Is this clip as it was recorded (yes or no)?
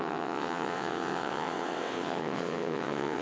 no